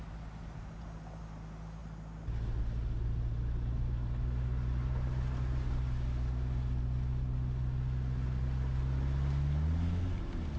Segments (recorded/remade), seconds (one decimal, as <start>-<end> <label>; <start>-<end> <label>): 0.0-10.6 recorded